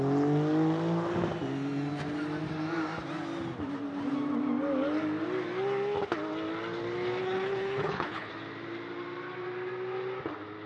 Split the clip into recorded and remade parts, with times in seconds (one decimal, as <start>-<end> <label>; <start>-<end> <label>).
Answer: 0.0-7.2 recorded; 7.2-8.3 remade; 8.3-10.7 recorded